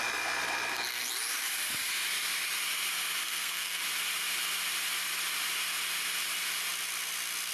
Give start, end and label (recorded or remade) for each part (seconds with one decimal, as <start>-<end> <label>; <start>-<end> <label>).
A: 0.0-3.2 recorded; 3.2-3.8 remade; 3.8-7.5 recorded